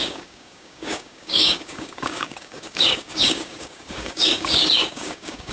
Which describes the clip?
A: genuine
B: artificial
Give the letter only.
B